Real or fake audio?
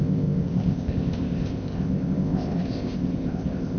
fake